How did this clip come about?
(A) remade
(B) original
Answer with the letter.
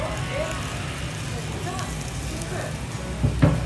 B